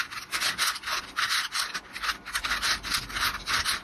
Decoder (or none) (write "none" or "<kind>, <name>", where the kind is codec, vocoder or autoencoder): none